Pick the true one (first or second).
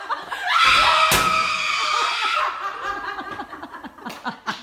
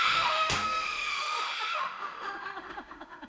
first